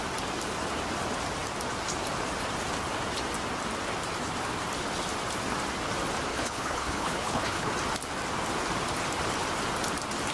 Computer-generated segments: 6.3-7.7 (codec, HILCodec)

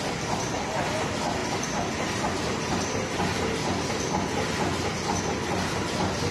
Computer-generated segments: none